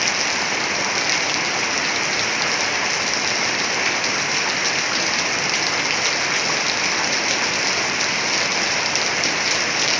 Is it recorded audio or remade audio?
recorded